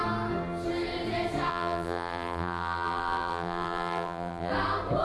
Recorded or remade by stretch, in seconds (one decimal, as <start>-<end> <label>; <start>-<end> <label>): 0.0-1.5 recorded; 1.5-4.5 remade; 4.5-5.0 recorded